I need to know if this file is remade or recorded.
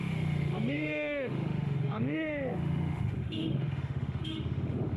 remade